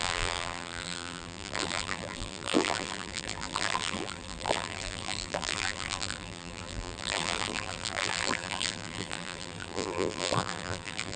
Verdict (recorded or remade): remade